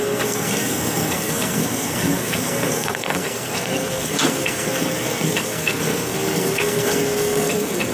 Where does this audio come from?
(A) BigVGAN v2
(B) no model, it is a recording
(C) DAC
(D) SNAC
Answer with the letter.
D